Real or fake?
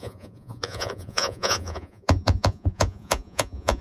fake